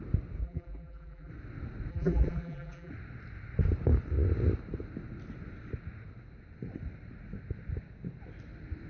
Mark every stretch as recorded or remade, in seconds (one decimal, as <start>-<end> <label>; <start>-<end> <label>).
0.0-0.4 recorded; 0.4-1.3 remade; 1.3-1.9 recorded; 1.9-2.9 remade; 2.9-8.9 recorded